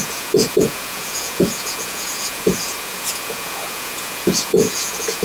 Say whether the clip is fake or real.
fake